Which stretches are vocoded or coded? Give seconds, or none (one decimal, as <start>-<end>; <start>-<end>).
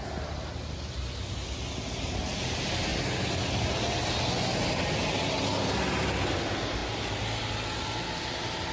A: none